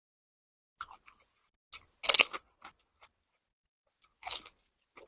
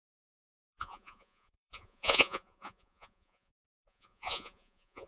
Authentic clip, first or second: first